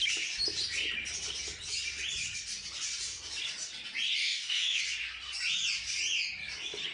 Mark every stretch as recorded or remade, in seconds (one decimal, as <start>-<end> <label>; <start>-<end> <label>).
0.0-4.2 recorded; 4.2-4.8 remade; 4.8-6.9 recorded